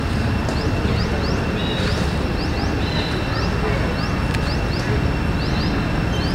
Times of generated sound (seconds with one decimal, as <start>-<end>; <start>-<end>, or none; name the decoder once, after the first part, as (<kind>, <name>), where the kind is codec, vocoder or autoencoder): 0.4-1.1 (vocoder, BigVGAN v2); 1.6-2.9